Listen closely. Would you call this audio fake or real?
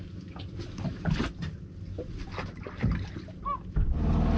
real